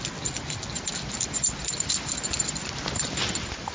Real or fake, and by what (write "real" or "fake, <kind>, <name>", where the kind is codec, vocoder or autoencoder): real